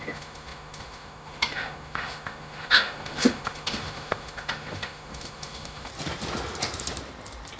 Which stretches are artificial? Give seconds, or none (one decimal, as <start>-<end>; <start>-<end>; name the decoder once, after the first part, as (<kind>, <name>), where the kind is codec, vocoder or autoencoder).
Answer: 0.0-5.9 (autoencoder, DAC-VAE)